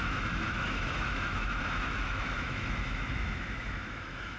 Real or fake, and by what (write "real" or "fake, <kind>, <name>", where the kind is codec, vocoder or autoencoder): fake, autoencoder, DAC-VAE